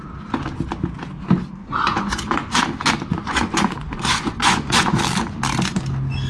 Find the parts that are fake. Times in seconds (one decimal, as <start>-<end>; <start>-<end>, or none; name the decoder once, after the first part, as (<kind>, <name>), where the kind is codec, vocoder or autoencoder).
1.6-2.6 (vocoder, Vocos); 3.1-5.0